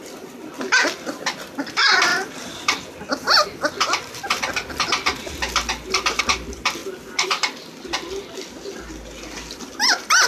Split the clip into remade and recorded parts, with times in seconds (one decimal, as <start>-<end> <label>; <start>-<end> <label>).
0.0-6.8 remade; 6.8-9.7 recorded; 9.7-10.3 remade